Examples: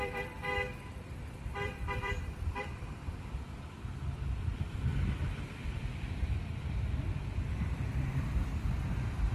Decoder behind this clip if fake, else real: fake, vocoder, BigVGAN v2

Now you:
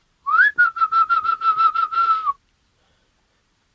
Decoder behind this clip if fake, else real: real